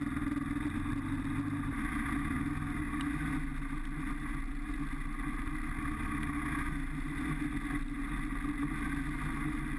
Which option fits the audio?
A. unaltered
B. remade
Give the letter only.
A